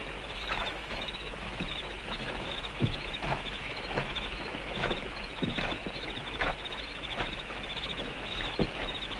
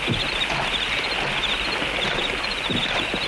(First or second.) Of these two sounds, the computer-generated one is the first